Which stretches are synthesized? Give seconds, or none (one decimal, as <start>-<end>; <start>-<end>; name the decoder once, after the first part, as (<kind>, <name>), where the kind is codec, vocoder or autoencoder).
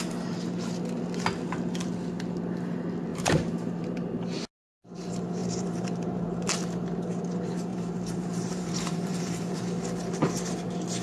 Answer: 3.1-3.8 (vocoder, BigVGAN v2); 5.4-6.5; 7.7-9.6